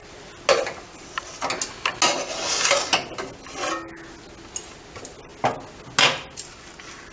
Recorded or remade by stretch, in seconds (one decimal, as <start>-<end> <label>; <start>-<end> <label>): 0.0-7.1 recorded